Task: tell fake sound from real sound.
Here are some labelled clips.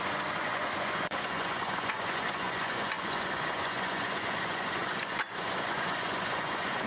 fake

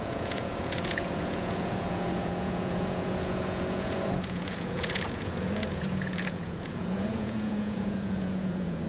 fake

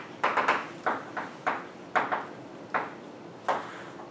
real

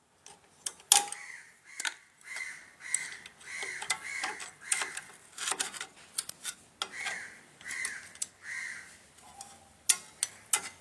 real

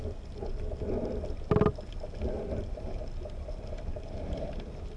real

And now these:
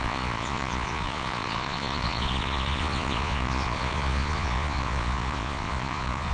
fake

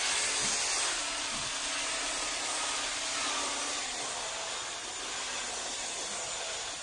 real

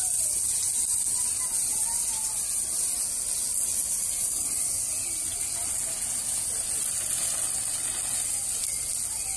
real